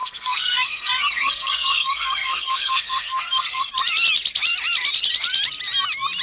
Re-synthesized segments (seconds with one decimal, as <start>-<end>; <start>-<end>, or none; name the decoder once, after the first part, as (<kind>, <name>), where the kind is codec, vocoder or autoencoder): 0.0-3.7 (codec, SNAC)